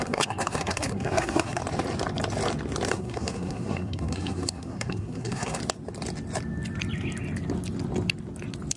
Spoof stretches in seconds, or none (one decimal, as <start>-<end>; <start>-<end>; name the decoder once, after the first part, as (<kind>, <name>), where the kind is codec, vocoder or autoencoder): 0.0-1.6 (codec, SNAC); 2.9-5.6